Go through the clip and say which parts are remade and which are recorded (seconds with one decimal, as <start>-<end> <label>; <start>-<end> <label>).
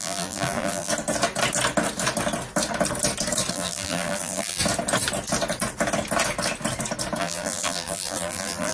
0.0-0.9 remade; 0.9-3.5 recorded; 3.5-4.6 remade; 4.6-7.2 recorded; 7.2-8.7 remade